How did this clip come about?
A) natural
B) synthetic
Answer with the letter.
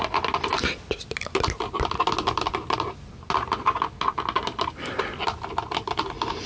A